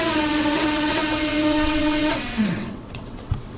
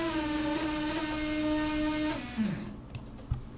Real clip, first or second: second